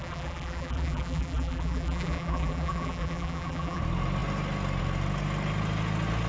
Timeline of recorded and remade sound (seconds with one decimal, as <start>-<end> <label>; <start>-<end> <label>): 0.0-3.8 remade; 3.8-6.3 recorded